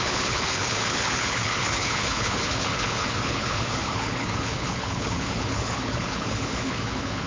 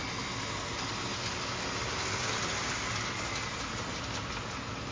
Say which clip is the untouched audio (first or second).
second